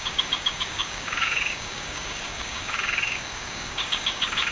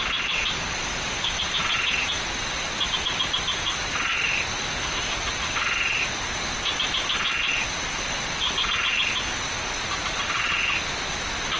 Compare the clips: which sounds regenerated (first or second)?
first